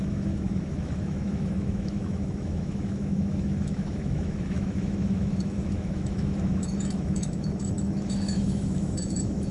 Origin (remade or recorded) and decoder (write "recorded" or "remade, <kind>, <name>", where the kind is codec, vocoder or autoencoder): remade, autoencoder, DAC-VAE